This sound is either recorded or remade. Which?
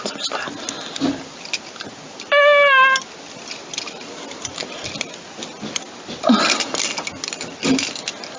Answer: recorded